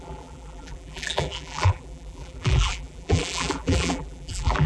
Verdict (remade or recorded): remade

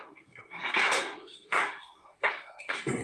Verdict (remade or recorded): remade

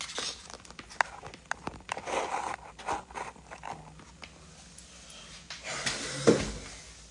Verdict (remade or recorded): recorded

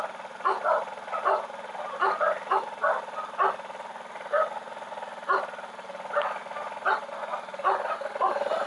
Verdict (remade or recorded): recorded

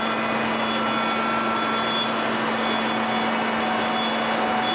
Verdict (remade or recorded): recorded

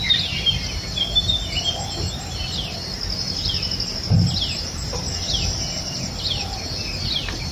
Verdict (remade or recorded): recorded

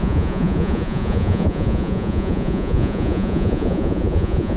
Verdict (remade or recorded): remade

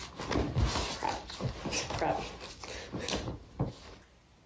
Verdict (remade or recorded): recorded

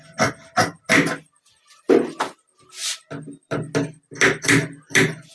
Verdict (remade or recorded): recorded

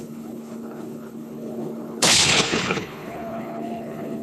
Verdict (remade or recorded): remade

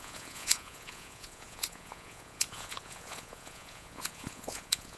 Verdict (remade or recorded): remade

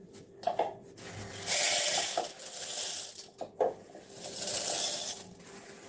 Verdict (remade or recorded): recorded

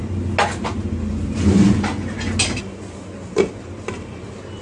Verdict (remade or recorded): recorded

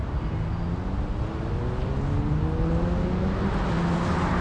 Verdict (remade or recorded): recorded